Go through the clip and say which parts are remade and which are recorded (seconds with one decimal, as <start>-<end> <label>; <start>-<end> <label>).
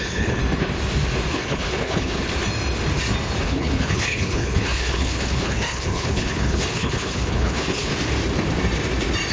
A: 0.0-0.4 remade; 0.4-1.3 recorded; 1.3-2.2 remade; 2.2-3.4 recorded; 3.4-7.9 remade; 7.9-9.3 recorded